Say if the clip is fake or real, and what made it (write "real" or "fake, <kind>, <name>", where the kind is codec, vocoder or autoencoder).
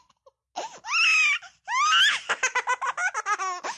real